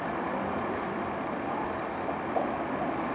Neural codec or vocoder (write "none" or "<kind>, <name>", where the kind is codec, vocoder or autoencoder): none